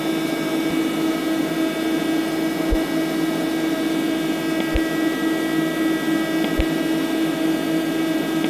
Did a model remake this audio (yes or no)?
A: no